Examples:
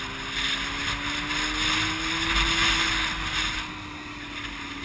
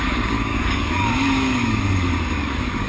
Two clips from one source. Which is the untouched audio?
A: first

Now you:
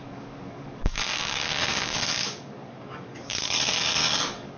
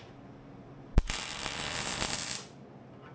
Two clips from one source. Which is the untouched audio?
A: second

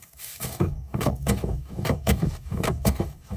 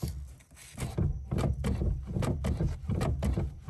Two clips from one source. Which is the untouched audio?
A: second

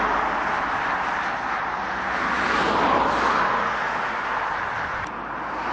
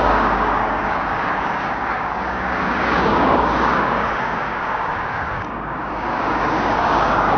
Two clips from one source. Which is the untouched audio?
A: first